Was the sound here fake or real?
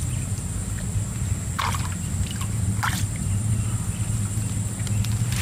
real